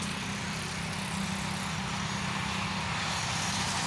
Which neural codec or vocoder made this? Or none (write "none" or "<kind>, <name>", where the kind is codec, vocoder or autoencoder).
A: none